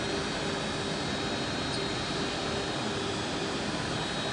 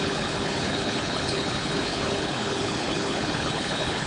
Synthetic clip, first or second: second